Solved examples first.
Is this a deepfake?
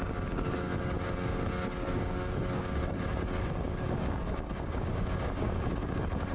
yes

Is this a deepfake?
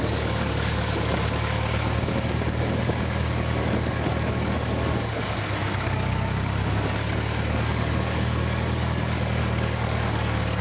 yes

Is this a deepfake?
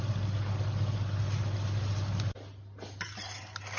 no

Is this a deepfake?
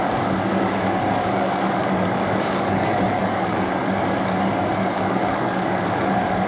yes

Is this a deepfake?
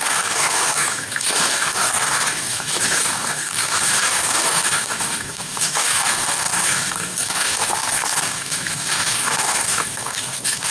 yes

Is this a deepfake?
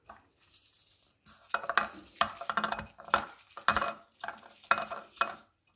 no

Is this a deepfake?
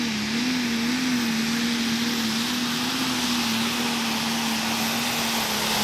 no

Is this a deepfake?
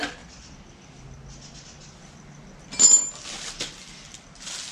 no